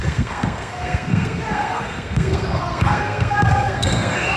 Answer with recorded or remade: remade